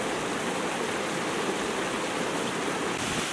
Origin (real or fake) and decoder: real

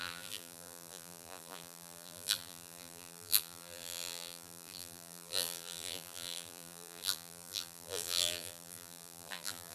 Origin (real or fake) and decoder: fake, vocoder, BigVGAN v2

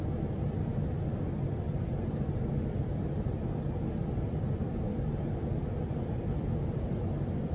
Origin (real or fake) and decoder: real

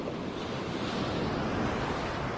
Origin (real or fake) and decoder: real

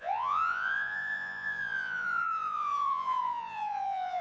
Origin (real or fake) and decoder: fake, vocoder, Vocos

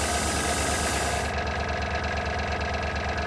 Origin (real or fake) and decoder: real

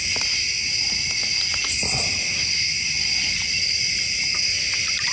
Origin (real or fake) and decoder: real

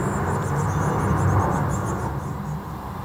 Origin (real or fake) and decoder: real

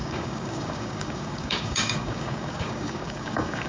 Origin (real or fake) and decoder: fake, codec, DAC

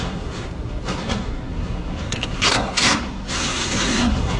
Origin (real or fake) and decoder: fake, codec, SNAC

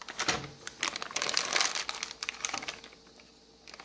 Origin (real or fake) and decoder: real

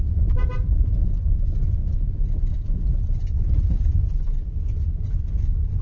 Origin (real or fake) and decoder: real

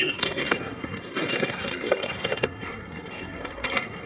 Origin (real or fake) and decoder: fake, codec, SNAC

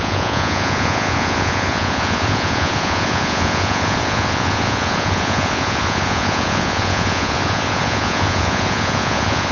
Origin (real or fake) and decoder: fake, vocoder, Vocos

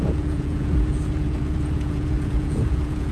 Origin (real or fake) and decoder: fake, vocoder, Vocos